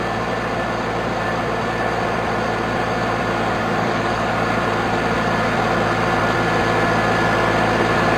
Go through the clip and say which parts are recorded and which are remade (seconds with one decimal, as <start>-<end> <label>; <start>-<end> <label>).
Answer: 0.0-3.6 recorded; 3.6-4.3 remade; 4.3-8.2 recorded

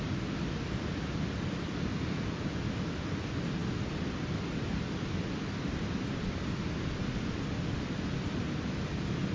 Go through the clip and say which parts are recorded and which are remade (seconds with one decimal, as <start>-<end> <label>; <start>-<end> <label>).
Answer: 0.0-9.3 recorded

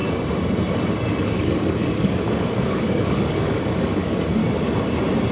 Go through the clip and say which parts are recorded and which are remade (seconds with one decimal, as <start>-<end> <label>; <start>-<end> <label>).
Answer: 0.0-1.2 recorded; 1.2-4.4 remade; 4.4-5.3 recorded